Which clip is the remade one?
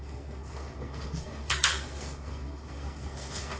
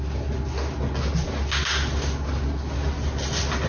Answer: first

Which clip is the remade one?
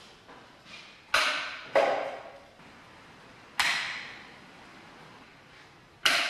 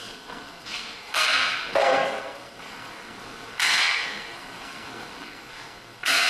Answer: second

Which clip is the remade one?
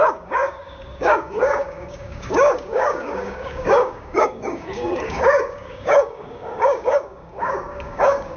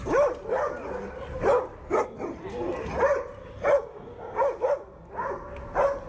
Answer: first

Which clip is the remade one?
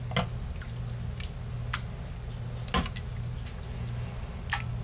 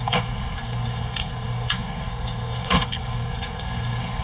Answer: second